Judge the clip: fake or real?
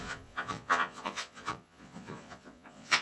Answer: fake